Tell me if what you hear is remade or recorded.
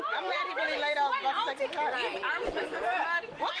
recorded